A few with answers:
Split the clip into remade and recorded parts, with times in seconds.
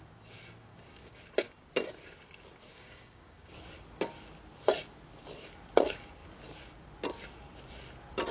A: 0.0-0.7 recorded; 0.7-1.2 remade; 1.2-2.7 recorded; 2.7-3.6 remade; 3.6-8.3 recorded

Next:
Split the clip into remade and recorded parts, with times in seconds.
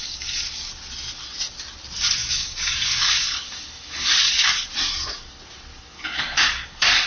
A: 0.0-0.7 remade; 0.7-2.2 recorded; 2.2-4.5 remade; 4.5-5.7 recorded; 5.7-7.1 remade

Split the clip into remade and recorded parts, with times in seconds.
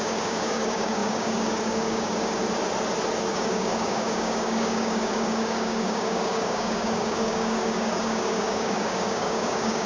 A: 0.0-2.4 remade; 2.4-3.3 recorded; 3.3-9.9 remade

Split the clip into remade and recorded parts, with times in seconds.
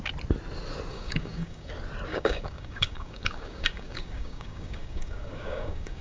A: 0.0-0.9 recorded; 0.9-1.7 remade; 1.7-2.1 recorded; 2.1-6.0 remade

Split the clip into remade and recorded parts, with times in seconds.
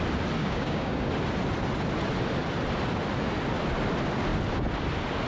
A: 0.0-0.4 recorded; 0.4-1.1 remade; 1.1-5.3 recorded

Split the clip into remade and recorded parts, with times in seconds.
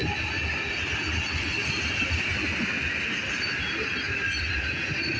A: 0.0-5.2 recorded